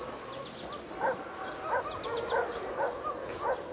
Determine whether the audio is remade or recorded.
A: recorded